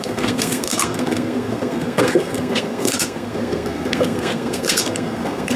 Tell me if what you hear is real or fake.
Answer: fake